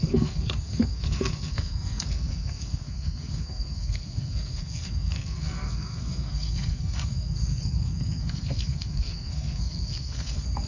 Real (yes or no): no